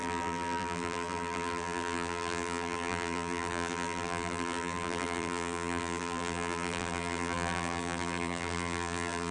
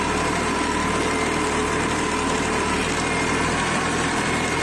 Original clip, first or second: second